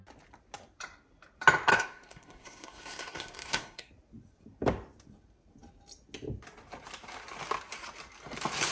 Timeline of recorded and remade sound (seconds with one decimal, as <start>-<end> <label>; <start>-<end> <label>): 0.0-1.7 recorded; 1.7-3.9 remade; 3.9-8.7 recorded